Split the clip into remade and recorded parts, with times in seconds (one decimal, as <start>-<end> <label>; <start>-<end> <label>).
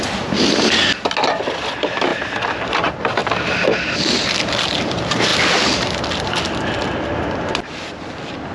0.0-8.5 recorded